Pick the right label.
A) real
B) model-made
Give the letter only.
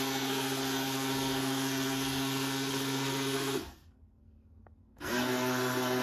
B